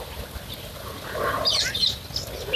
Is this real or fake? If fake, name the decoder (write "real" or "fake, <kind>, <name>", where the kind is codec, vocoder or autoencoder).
real